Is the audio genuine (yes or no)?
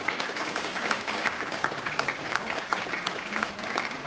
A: no